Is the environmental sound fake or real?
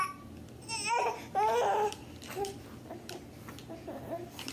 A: real